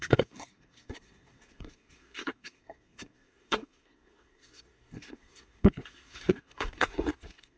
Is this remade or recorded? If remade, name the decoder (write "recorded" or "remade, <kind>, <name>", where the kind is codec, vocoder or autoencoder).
remade, codec, SNAC